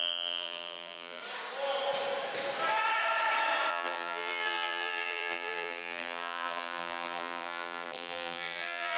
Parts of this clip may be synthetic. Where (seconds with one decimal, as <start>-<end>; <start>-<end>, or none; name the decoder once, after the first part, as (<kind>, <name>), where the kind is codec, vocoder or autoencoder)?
0.0-1.2 (vocoder, BigVGAN v2); 3.7-9.0